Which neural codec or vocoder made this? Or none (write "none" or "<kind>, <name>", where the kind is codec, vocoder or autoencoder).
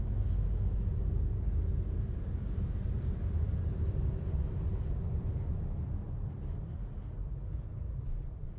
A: none